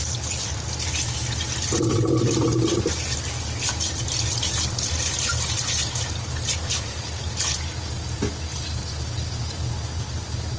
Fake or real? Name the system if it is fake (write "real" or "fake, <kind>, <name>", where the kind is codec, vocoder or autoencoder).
real